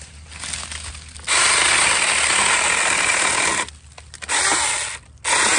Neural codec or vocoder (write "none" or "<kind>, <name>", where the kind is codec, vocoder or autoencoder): none